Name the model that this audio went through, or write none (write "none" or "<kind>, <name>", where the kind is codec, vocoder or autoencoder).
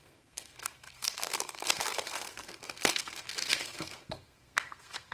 codec, SNAC